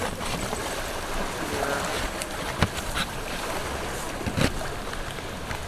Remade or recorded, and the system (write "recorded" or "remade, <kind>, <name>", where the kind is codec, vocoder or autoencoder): recorded